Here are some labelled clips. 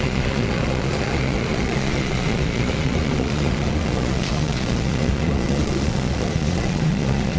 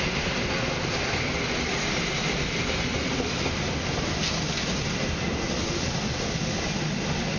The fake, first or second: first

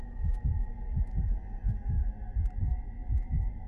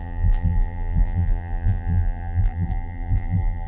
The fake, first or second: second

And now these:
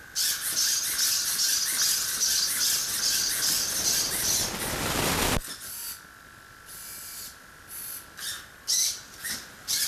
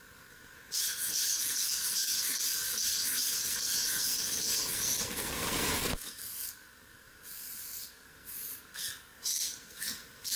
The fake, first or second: second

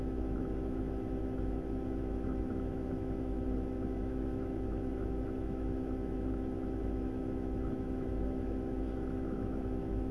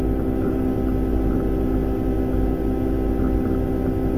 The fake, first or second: first